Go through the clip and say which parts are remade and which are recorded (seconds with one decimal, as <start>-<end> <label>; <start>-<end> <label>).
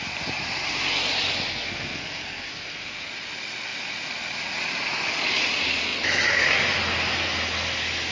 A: 0.0-1.5 recorded; 1.5-3.1 remade; 3.1-8.1 recorded